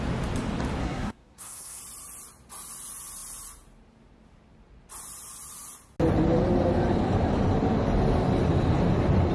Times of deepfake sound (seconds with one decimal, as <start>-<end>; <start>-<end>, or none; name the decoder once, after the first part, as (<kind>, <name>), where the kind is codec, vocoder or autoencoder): 0.8-1.8 (codec, SNAC)